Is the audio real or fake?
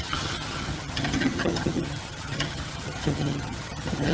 fake